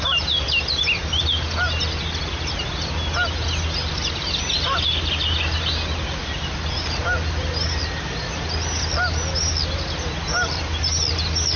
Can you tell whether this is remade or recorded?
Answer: recorded